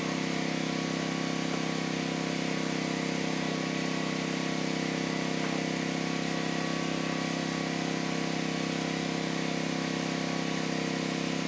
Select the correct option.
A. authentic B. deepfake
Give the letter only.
A